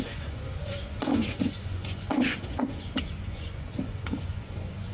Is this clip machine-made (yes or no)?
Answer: yes